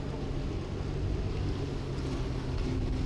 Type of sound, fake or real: real